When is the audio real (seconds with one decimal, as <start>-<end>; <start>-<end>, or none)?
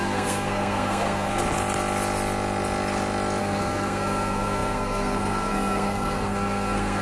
1.4-3.4